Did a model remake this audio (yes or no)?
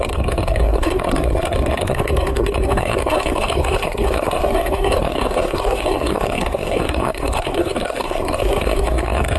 yes